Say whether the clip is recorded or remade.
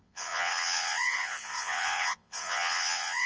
remade